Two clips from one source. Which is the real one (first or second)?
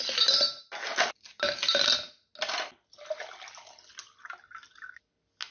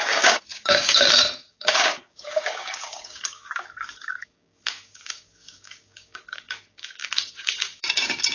first